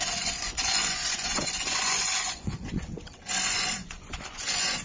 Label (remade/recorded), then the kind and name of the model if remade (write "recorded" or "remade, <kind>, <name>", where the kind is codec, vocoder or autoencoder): remade, vocoder, Vocos